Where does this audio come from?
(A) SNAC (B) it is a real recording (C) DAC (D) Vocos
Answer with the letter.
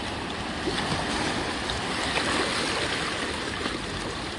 B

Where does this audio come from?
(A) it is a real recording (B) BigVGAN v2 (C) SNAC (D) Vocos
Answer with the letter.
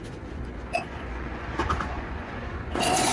D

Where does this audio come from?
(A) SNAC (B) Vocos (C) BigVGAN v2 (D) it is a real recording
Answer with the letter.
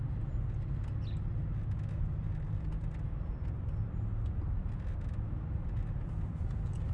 D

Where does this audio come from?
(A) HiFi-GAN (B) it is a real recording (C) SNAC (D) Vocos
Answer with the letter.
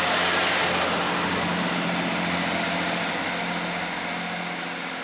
B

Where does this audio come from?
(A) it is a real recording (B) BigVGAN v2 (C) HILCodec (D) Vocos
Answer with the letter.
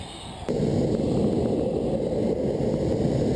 A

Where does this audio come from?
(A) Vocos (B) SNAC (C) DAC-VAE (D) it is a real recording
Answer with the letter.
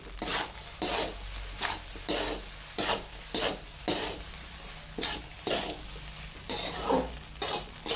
D